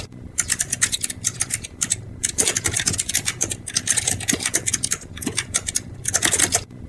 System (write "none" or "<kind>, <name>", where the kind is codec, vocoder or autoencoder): vocoder, Vocos